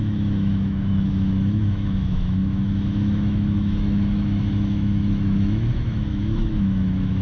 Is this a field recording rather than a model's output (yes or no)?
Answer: no